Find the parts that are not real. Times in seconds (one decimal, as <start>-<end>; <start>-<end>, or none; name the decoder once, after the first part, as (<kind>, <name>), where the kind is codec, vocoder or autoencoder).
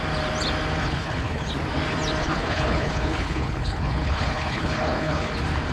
0.8-1.5 (codec, HILCodec); 2.2-5.3